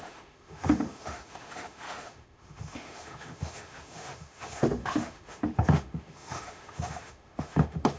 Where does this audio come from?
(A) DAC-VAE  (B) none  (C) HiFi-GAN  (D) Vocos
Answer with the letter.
A